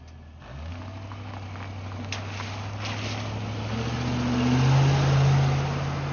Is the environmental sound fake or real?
real